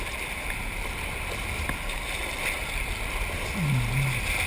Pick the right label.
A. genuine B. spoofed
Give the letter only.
A